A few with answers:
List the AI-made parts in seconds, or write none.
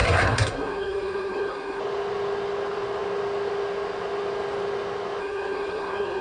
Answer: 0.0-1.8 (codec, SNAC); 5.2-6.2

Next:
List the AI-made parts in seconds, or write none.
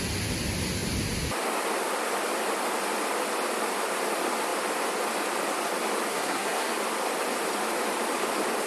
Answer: 6.1-6.7 (codec, SNAC)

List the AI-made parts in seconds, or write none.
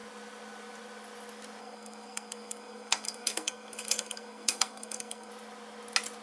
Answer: 1.6-5.3 (codec, SNAC)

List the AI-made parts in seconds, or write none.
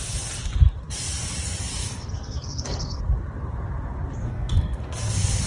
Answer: 1.8-3.0 (codec, SNAC); 4.2-5.5